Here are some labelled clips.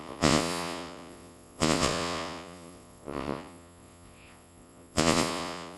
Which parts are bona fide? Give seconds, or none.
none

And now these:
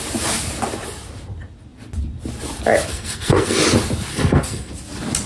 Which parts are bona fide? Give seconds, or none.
0.0-2.9; 3.6-4.1; 4.7-5.3

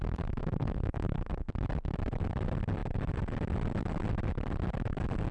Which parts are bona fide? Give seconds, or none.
0.0-0.4; 1.5-5.3

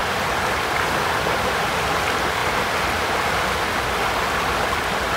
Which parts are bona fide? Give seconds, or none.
0.0-5.2

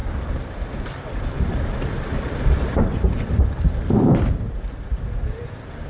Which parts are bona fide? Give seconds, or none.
none